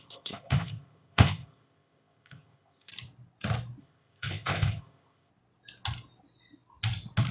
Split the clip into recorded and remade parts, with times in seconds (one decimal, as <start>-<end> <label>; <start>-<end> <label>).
0.0-2.9 remade; 2.9-3.8 recorded; 3.8-5.3 remade; 5.3-7.3 recorded